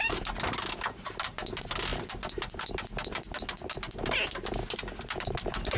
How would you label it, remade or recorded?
recorded